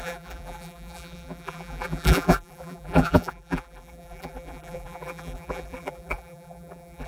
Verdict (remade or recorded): remade